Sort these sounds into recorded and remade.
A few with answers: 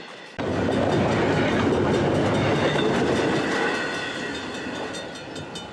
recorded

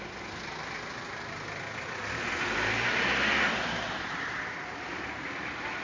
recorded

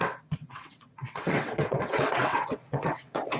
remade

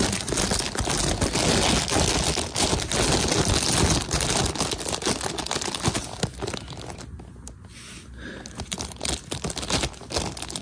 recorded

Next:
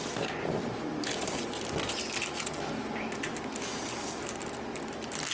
recorded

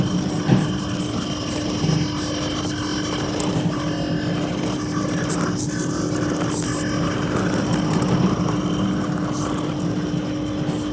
recorded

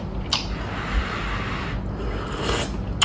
recorded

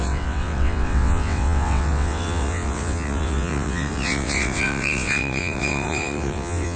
remade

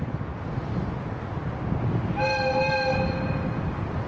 recorded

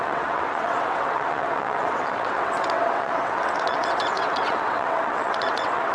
remade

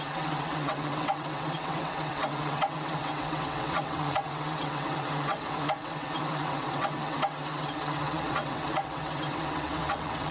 remade